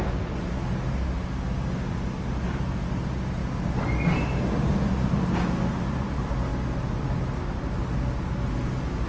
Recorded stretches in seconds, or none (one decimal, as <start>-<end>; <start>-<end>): 0.0-9.1